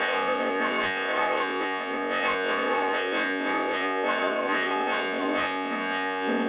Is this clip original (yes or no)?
no